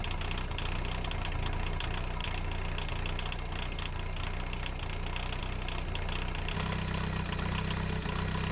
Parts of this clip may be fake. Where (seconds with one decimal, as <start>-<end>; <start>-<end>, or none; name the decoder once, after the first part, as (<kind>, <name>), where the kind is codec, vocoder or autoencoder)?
none